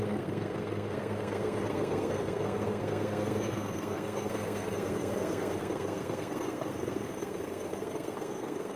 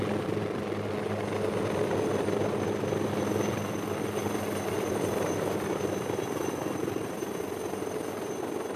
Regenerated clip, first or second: first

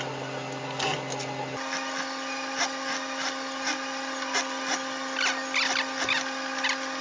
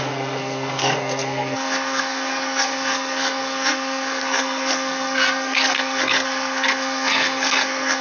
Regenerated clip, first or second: second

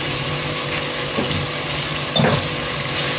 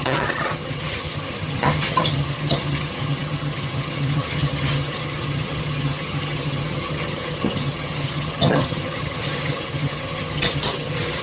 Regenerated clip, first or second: second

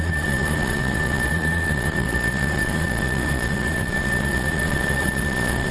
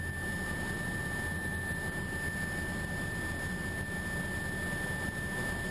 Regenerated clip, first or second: first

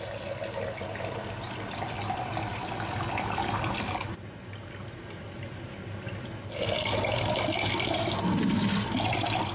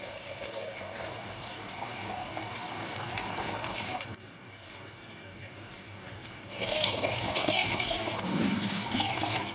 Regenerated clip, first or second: second